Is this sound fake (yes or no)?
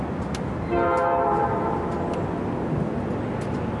no